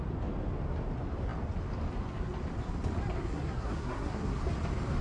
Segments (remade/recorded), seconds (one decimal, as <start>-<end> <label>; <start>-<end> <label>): 0.0-3.2 recorded; 3.2-4.4 remade; 4.4-5.0 recorded